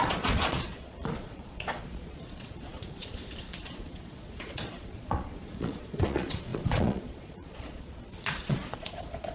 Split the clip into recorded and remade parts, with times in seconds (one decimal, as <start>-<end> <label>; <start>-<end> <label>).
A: 0.0-9.3 remade